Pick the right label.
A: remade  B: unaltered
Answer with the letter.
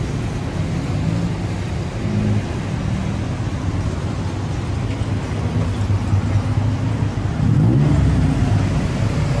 B